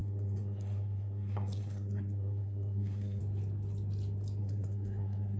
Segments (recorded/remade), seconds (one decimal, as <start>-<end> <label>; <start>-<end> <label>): 0.0-3.2 remade; 3.2-4.4 recorded; 4.4-5.4 remade